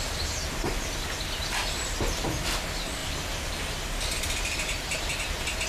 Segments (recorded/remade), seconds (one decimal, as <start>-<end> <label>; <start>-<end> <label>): 0.0-5.7 recorded